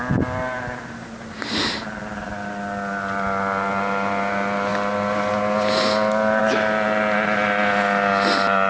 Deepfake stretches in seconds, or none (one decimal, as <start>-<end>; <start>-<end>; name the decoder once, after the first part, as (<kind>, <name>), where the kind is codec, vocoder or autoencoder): none